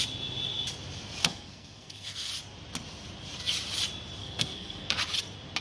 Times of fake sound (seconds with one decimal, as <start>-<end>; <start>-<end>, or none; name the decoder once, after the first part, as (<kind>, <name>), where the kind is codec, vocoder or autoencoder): 1.2-2.3 (codec, SNAC); 4.2-5.0